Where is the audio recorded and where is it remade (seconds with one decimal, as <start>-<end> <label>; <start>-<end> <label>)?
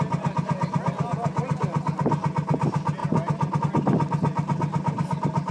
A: 0.0-5.5 recorded